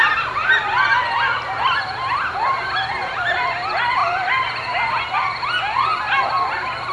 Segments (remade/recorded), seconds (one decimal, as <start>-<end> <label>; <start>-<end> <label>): 0.0-6.9 recorded

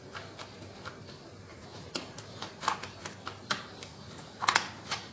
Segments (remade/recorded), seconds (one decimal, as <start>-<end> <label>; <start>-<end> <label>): 0.0-1.5 recorded; 1.5-2.7 remade; 2.7-3.9 recorded; 3.9-5.1 remade

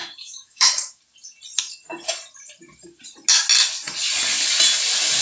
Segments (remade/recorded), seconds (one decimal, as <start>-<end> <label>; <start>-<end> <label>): 0.0-1.0 remade; 1.0-5.2 recorded